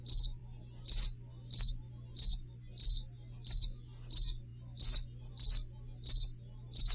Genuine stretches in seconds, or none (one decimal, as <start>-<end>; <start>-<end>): 0.0-6.9